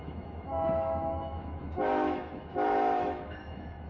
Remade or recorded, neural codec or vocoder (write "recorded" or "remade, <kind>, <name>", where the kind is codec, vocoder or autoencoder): remade, autoencoder, DAC-VAE